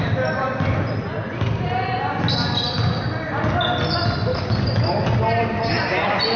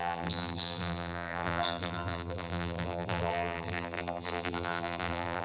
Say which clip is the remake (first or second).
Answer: second